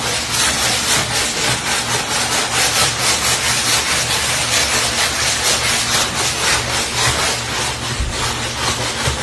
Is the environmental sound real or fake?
real